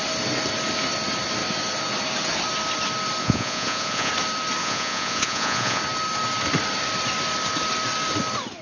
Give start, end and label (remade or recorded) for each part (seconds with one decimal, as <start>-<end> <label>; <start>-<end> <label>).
0.0-3.2 recorded; 3.2-4.1 remade; 4.1-4.6 recorded; 4.6-5.8 remade; 5.8-8.6 recorded